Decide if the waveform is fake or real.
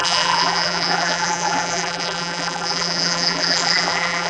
fake